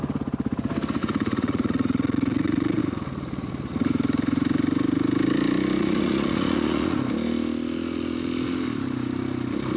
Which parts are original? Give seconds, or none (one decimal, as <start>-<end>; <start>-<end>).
0.0-1.0; 2.8-5.8; 7.0-9.8